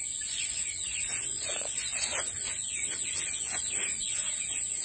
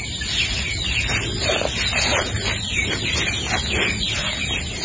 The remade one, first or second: first